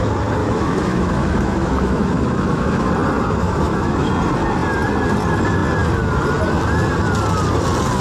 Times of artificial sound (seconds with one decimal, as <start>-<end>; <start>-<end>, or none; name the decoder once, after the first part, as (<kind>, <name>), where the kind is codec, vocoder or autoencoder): 0.4-2.9 (autoencoder, DAC-VAE); 3.4-4.1